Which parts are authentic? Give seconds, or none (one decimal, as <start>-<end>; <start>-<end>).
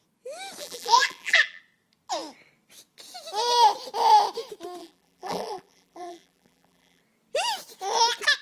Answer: 0.0-0.6; 1.6-4.8; 7.0-8.4